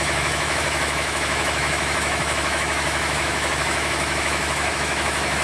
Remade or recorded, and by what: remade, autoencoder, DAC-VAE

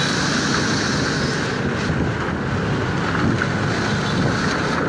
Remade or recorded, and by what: recorded